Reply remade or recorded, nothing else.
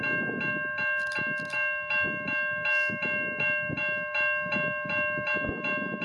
recorded